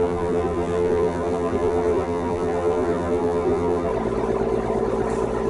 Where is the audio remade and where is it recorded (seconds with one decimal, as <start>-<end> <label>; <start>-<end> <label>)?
0.0-3.9 remade; 3.9-5.5 recorded